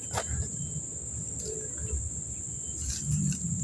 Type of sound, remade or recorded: recorded